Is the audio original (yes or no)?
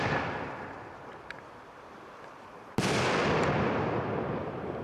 yes